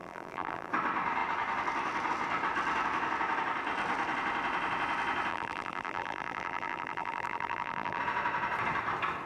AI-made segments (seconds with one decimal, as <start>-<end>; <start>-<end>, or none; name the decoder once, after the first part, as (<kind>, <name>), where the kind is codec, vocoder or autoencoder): 0.0-0.7 (vocoder, BigVGAN v2); 5.3-8.0